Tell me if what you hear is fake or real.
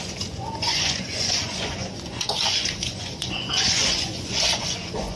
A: fake